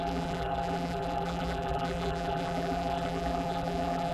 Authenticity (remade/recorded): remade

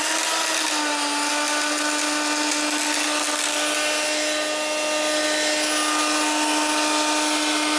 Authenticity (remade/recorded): recorded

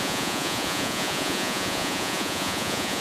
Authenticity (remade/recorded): remade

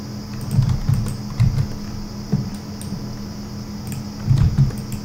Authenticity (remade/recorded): recorded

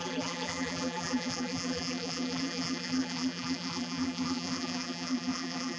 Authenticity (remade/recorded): remade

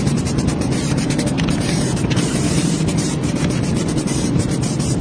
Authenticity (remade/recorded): remade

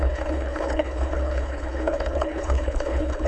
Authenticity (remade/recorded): remade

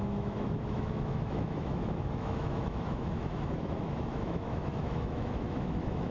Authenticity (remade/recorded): remade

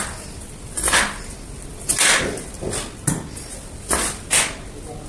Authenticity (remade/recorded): recorded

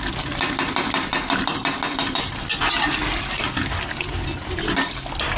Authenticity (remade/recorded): recorded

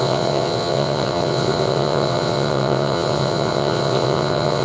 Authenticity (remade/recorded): remade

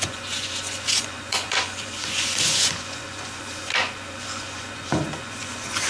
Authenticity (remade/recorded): remade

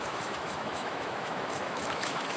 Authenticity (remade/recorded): remade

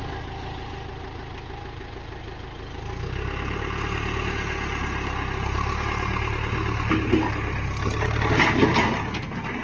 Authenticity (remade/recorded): recorded